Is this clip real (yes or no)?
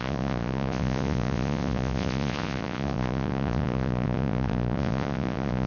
no